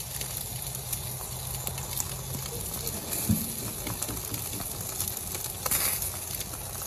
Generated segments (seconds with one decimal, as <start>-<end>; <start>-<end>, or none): none